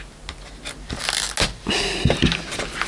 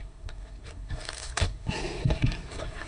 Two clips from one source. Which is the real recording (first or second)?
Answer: first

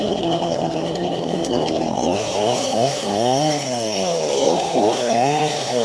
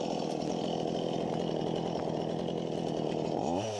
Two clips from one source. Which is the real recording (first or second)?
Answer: second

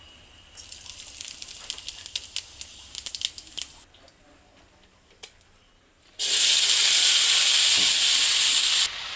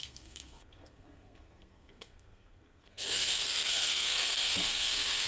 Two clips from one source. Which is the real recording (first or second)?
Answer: first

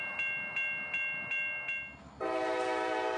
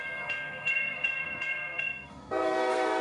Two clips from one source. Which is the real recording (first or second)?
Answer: first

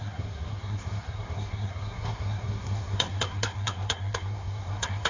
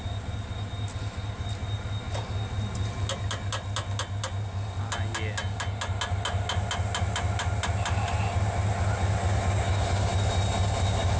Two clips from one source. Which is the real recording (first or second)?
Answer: second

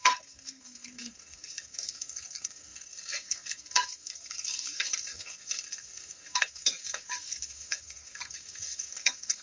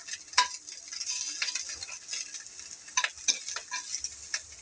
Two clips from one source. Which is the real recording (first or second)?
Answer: second